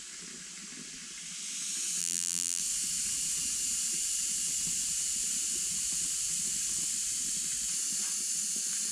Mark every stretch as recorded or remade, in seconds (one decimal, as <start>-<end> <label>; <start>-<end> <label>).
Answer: 0.0-2.0 recorded; 2.0-2.6 remade; 2.6-8.9 recorded